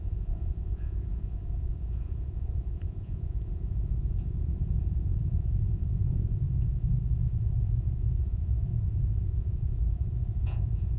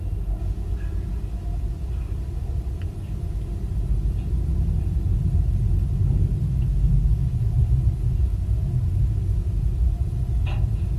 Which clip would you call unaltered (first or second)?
second